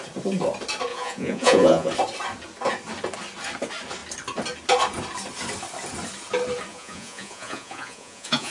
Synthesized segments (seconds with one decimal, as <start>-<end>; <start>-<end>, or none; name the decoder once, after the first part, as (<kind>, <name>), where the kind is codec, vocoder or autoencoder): 0.9-1.9 (vocoder, Vocos); 6.7-8.5